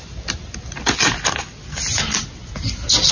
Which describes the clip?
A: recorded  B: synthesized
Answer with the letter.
A